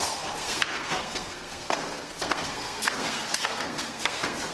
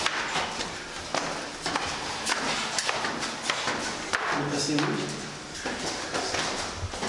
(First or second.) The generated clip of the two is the first